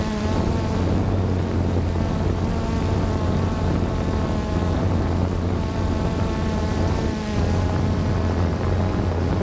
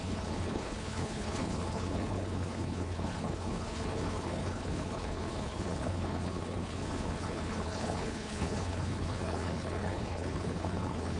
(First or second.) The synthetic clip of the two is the second